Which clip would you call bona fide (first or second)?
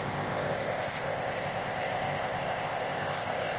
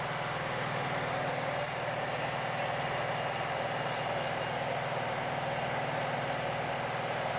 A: second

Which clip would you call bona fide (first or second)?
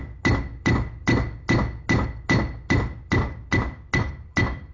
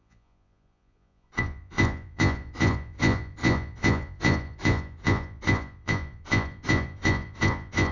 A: first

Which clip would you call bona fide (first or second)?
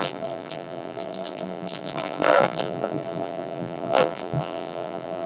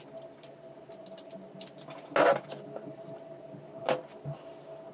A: second